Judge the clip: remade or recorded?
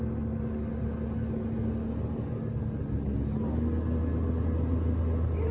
recorded